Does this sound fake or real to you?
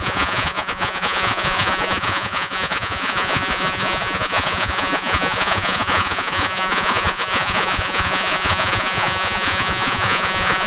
fake